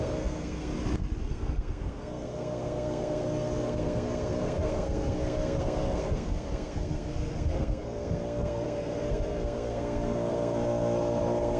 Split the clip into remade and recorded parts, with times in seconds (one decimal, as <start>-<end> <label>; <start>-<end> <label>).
0.0-0.7 remade; 0.7-1.2 recorded; 1.2-11.6 remade